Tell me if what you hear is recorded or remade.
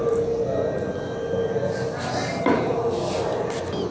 recorded